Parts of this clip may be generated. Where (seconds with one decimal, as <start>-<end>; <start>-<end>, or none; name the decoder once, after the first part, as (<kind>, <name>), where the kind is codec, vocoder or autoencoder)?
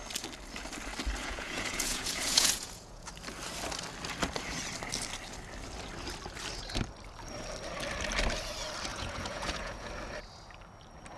1.2-3.1 (vocoder, Vocos); 8.9-9.9